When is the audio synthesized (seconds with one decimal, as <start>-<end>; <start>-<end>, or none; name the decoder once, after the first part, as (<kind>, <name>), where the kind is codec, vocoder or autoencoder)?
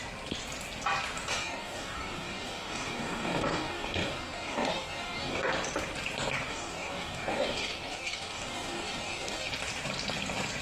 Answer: 1.3-5.5 (codec, DAC); 6.5-9.5